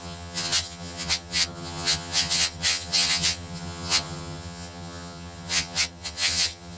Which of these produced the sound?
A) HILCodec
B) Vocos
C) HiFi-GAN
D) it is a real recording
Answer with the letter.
C